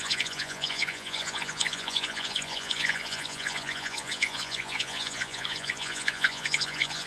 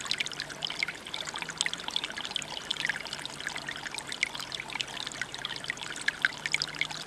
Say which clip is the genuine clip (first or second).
second